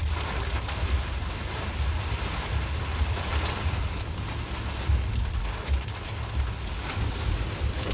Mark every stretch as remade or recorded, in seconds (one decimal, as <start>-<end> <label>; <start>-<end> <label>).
0.0-7.9 recorded